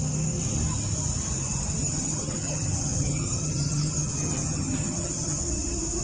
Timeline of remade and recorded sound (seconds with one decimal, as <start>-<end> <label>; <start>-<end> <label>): 0.0-1.8 recorded; 1.8-5.4 remade; 5.4-6.0 recorded